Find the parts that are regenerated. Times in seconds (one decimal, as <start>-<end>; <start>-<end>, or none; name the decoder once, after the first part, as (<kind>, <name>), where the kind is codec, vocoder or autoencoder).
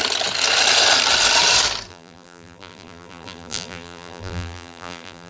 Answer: 1.9-5.3 (vocoder, BigVGAN v2)